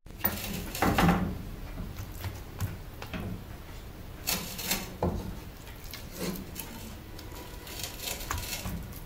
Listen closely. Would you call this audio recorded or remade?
recorded